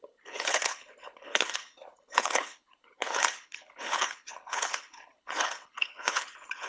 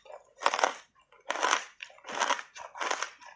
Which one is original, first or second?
second